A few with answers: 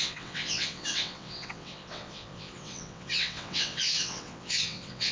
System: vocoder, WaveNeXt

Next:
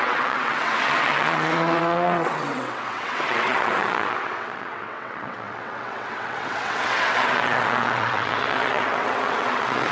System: vocoder, WaveNeXt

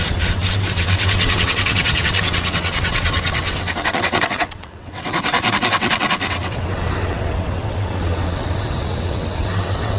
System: vocoder, WaveNeXt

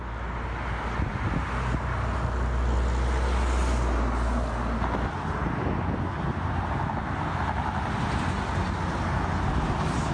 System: none